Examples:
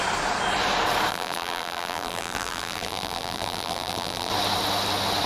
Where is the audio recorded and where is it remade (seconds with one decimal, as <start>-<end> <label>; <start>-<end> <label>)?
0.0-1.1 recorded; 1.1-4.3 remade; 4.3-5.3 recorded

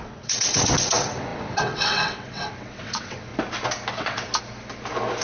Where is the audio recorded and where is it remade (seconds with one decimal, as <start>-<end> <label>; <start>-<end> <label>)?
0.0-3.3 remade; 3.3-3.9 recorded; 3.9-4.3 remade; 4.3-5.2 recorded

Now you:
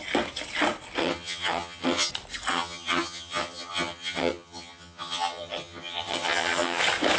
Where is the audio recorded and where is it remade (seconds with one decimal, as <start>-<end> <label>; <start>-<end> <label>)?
0.0-1.0 recorded; 1.0-2.1 remade; 2.1-2.5 recorded; 2.5-6.8 remade; 6.8-7.2 recorded

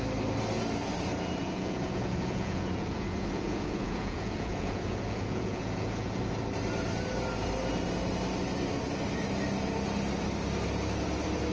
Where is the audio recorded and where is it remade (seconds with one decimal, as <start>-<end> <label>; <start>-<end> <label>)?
0.0-1.4 recorded; 1.4-6.2 remade; 6.2-11.5 recorded